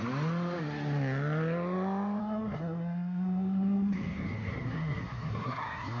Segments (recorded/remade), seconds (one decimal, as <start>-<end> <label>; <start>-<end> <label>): 0.0-2.2 recorded; 2.2-6.0 remade